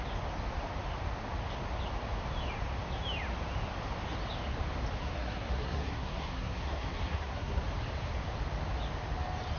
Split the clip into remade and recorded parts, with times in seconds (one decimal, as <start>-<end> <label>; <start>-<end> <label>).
0.0-5.0 recorded; 5.0-7.6 remade; 7.6-9.6 recorded